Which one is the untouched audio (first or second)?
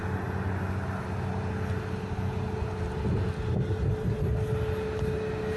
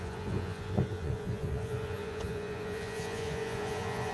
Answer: first